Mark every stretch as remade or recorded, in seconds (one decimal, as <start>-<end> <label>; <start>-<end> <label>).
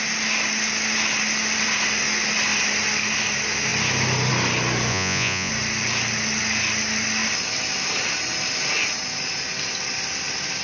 0.0-4.9 recorded; 4.9-5.5 remade; 5.5-10.6 recorded